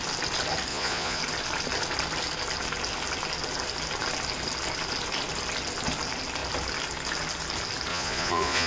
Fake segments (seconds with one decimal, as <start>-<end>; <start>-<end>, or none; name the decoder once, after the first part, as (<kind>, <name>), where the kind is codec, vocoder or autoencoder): 0.7-1.2 (vocoder, Vocos); 7.9-8.7